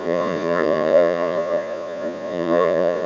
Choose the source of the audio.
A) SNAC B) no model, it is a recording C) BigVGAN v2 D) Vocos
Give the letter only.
D